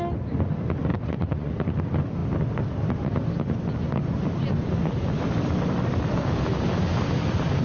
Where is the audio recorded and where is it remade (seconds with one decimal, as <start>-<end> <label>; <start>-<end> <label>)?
0.0-0.9 recorded; 0.9-1.5 remade; 1.5-7.6 recorded